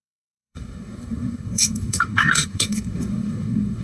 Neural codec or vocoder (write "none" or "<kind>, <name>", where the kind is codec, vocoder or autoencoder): codec, SNAC